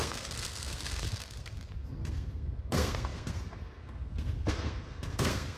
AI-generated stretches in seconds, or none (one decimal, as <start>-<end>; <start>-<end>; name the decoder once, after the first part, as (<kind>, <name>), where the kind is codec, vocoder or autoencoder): 0.0-5.6 (codec, SNAC)